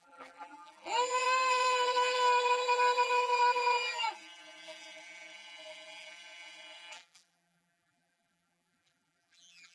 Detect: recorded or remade remade